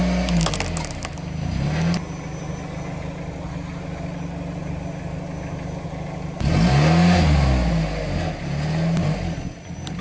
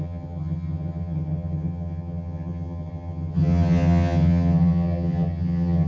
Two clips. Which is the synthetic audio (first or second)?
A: second